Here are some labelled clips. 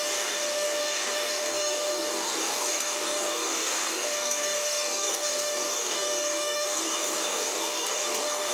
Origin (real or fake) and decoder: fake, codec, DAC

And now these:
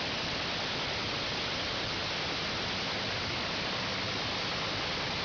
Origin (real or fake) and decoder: real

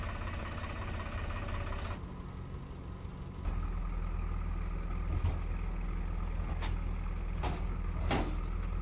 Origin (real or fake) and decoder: real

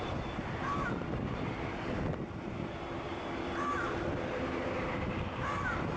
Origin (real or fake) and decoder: real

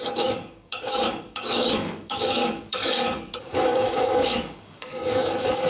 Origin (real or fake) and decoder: fake, codec, DAC